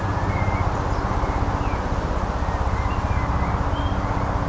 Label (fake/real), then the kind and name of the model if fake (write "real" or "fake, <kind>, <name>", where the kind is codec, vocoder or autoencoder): real